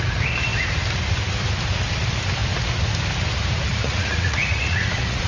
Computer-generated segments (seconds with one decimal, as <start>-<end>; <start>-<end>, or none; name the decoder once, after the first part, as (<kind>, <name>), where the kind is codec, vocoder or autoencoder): 3.7-5.3 (vocoder, Vocos)